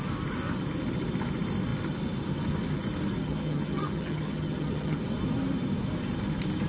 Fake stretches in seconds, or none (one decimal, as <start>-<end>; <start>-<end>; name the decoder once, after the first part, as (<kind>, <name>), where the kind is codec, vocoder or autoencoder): 3.2-5.0 (vocoder, HiFi-GAN)

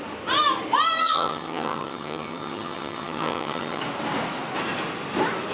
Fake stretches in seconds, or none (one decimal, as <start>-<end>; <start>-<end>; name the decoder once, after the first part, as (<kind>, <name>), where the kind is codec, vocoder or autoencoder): 1.0-3.8 (vocoder, HiFi-GAN)

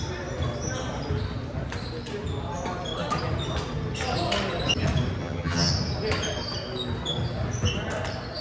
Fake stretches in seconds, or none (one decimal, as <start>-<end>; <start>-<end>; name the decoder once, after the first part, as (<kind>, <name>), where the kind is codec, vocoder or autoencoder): 5.2-5.7 (vocoder, HiFi-GAN)

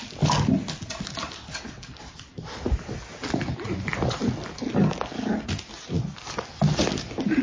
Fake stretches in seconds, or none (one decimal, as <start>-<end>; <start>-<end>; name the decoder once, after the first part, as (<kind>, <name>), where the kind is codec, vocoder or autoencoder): none

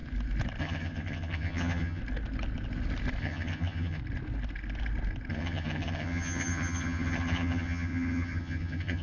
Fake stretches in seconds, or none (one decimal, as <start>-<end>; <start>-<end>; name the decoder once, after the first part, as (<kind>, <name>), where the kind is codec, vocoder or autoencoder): 0.6-2.0 (vocoder, HiFi-GAN); 3.2-4.0; 5.3-9.0

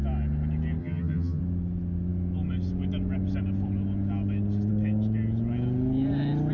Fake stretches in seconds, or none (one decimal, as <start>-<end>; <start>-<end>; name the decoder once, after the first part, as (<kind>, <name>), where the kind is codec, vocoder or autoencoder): 0.8-1.4 (vocoder, HiFi-GAN)

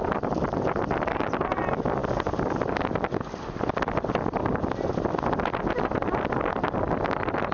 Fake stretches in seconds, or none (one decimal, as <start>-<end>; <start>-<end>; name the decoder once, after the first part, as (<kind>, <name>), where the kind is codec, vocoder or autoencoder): none

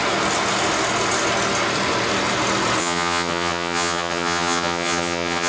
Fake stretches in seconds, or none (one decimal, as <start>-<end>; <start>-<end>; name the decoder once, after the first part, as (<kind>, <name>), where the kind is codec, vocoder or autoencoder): 2.8-5.5 (vocoder, HiFi-GAN)